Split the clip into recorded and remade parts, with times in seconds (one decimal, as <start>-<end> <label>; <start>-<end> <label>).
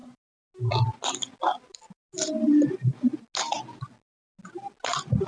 0.0-5.3 recorded